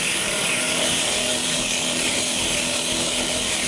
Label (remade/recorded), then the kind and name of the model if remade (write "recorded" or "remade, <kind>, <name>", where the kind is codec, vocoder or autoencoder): remade, codec, DAC